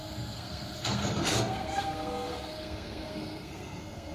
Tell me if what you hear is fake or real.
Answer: fake